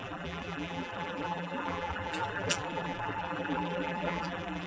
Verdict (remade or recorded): remade